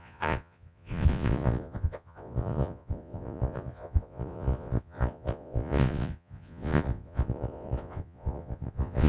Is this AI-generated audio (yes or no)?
yes